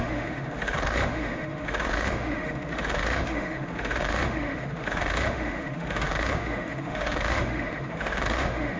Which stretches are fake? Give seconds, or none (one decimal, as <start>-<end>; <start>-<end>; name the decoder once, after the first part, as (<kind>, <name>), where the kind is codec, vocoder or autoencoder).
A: 0.0-8.8 (autoencoder, DAC-VAE)